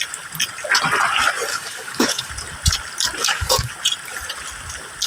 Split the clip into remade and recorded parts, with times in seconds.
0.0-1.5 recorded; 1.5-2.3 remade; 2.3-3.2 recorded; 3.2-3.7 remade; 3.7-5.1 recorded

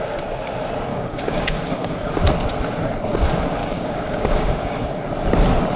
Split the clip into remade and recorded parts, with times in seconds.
0.0-0.9 recorded; 0.9-2.1 remade; 2.1-3.6 recorded; 3.6-4.8 remade; 4.8-5.8 recorded

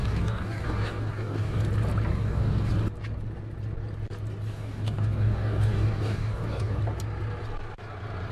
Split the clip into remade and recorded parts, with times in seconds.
0.0-1.6 remade; 1.6-2.1 recorded; 2.1-2.7 remade; 2.7-4.5 recorded; 4.5-6.8 remade; 6.8-8.3 recorded

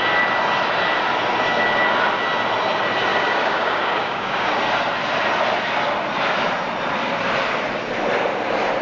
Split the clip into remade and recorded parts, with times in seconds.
0.0-3.1 recorded; 3.1-4.5 remade; 4.5-8.8 recorded

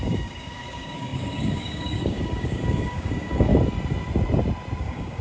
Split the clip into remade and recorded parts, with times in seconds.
0.0-3.5 remade; 3.5-4.8 recorded; 4.8-5.2 remade

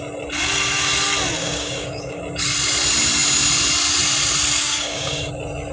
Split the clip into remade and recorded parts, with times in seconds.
0.0-1.4 recorded; 1.4-2.2 remade; 2.2-4.6 recorded; 4.6-5.3 remade; 5.3-5.7 recorded

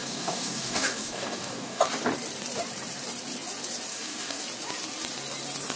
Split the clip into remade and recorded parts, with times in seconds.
0.0-1.8 remade; 1.8-3.9 recorded; 3.9-4.4 remade; 4.4-5.8 recorded